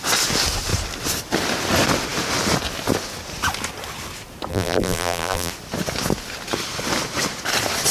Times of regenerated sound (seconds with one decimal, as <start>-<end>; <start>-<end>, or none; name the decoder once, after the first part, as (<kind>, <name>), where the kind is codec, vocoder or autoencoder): 4.5-5.5 (vocoder, BigVGAN v2)